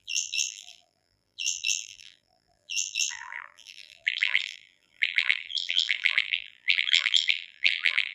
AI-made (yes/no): yes